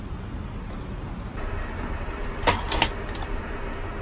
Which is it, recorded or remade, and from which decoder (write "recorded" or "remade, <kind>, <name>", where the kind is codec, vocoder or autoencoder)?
recorded